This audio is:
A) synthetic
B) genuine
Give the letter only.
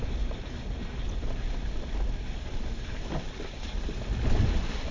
B